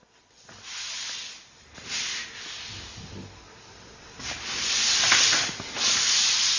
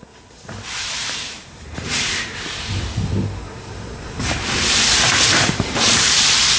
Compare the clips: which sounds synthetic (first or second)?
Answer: second